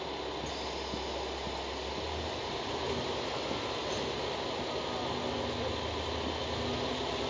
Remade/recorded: recorded